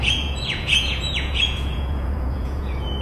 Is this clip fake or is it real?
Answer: fake